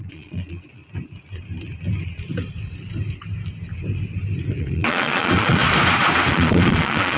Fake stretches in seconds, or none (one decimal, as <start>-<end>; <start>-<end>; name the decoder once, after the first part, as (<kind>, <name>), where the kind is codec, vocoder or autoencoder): 0.0-0.8 (vocoder, Vocos); 4.6-5.6; 6.3-7.2